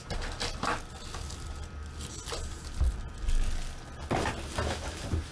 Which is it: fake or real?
real